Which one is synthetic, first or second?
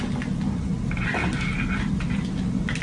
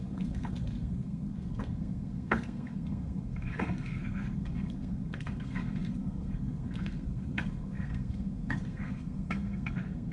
second